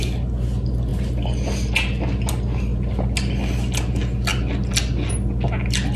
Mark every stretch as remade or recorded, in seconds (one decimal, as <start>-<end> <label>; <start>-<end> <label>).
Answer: 0.0-6.0 recorded